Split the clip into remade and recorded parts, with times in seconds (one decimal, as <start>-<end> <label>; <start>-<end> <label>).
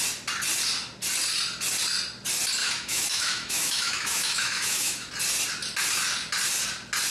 0.0-2.6 recorded; 2.6-5.1 remade; 5.1-7.1 recorded